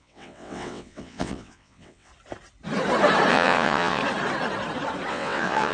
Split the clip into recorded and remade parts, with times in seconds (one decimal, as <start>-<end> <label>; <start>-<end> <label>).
0.0-2.1 remade; 2.1-3.3 recorded; 3.3-4.0 remade; 4.0-5.1 recorded; 5.1-5.7 remade